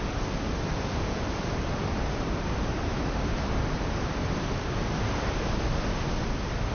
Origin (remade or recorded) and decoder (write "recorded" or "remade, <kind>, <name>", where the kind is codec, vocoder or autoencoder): recorded